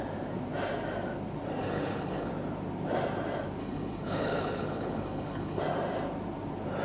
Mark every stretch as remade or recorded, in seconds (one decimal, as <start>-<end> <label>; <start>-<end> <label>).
0.0-1.6 recorded; 1.6-2.3 remade; 2.3-3.6 recorded; 3.6-5.6 remade; 5.6-6.8 recorded